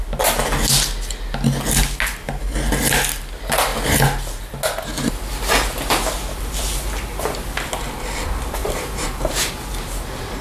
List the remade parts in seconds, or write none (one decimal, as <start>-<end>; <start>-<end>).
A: 8.6-9.5